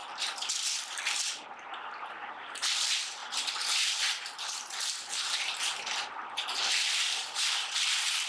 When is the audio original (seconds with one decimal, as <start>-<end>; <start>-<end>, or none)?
none